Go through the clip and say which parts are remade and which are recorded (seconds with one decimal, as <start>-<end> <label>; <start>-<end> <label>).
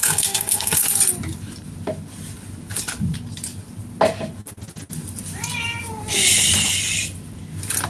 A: 0.0-0.8 remade; 0.8-7.9 recorded